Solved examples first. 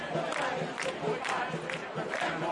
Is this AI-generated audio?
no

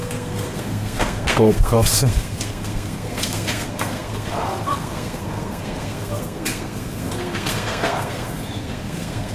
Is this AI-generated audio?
yes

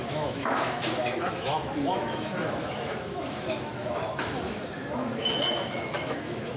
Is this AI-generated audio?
yes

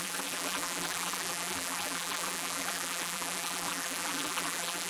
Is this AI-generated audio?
yes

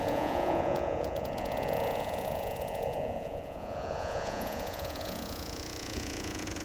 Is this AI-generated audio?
yes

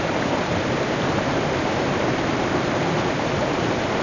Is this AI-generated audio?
yes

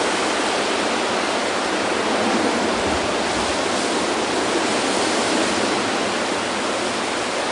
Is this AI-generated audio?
no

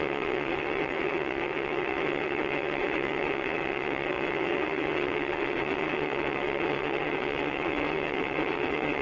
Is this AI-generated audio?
yes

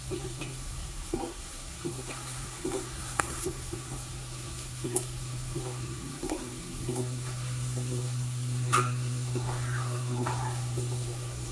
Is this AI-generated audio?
yes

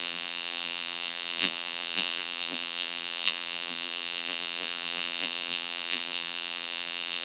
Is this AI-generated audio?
yes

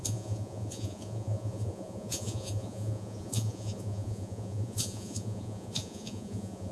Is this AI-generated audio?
yes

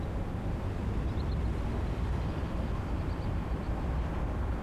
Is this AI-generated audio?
yes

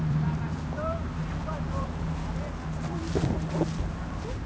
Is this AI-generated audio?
yes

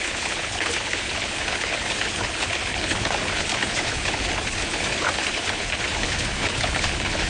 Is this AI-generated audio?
yes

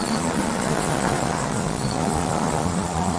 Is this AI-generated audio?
yes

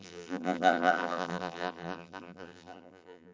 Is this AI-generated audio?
yes